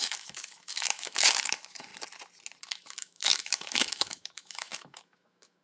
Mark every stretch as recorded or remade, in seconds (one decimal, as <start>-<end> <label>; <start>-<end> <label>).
0.0-1.9 remade; 1.9-2.6 recorded; 2.6-5.6 remade

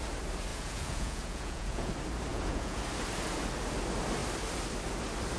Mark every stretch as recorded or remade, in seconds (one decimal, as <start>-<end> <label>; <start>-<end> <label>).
0.0-0.5 recorded; 0.5-1.9 remade; 1.9-2.3 recorded; 2.3-2.8 remade; 2.8-5.4 recorded

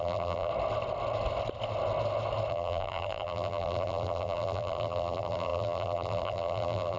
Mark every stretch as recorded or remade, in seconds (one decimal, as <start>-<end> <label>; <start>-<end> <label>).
0.0-0.5 remade; 0.5-2.5 recorded; 2.5-7.0 remade

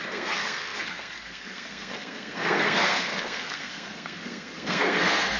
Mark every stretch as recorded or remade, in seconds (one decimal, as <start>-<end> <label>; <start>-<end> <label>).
0.0-5.4 remade